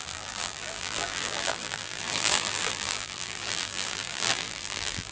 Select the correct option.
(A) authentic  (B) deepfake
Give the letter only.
B